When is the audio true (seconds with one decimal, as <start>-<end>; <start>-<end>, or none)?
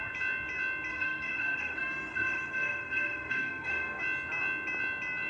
0.0-0.9; 4.0-5.3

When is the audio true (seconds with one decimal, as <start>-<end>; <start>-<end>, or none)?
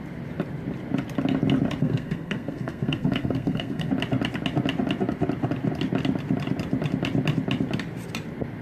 0.0-1.8; 3.9-8.6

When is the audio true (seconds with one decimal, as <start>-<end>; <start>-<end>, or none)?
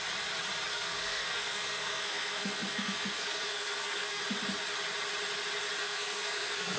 0.0-0.7; 4.2-5.8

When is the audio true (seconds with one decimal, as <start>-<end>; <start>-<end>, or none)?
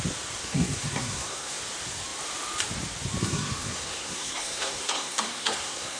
0.0-0.4; 1.6-3.2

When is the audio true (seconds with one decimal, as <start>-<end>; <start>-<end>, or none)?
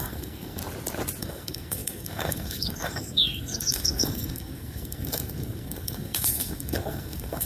0.6-1.2